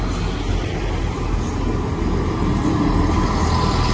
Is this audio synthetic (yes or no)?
no